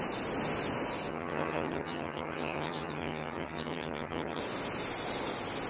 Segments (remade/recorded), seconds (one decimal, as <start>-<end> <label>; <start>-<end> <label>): 0.0-1.1 recorded; 1.1-4.4 remade; 4.4-5.7 recorded